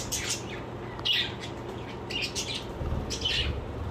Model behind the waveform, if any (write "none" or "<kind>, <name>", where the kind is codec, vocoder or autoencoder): none